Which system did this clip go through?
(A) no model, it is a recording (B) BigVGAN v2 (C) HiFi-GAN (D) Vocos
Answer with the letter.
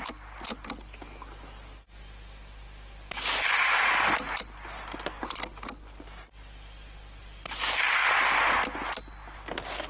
A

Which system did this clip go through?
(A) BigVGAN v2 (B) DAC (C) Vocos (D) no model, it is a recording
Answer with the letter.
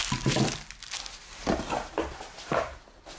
D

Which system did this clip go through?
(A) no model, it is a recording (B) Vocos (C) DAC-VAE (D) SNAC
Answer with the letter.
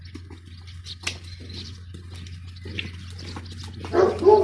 A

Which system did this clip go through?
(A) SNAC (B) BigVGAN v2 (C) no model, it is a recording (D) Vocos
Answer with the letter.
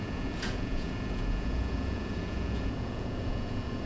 D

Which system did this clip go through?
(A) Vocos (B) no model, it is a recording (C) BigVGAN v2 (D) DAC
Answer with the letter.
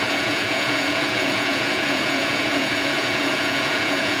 A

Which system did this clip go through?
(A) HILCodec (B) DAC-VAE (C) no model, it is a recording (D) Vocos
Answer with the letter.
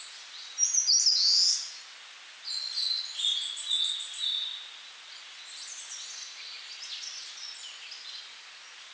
C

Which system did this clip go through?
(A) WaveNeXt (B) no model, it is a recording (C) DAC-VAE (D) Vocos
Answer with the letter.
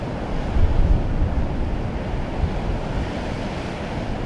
B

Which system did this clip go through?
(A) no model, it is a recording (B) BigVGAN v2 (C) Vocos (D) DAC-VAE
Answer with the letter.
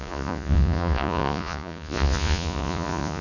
C